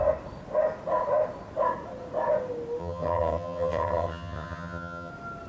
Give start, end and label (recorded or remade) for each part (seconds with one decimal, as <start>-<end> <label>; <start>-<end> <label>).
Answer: 0.0-2.8 recorded; 2.8-5.1 remade; 5.1-5.5 recorded